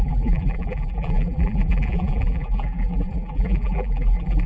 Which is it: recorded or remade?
remade